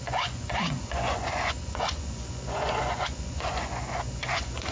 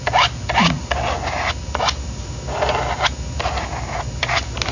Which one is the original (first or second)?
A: second